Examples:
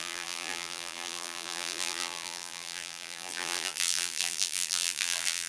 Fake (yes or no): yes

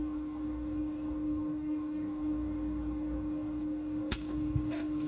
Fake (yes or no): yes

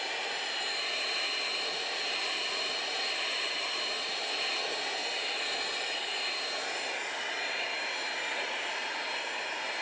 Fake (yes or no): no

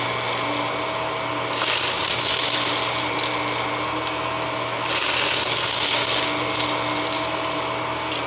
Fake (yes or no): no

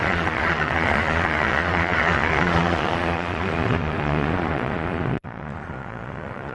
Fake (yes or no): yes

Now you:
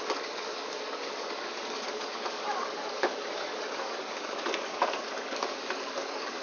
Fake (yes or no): yes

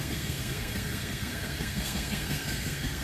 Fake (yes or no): yes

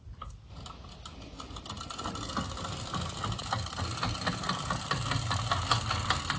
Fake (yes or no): no